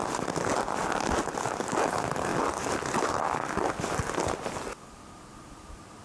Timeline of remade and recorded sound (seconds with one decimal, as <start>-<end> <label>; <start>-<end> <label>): 0.0-6.0 recorded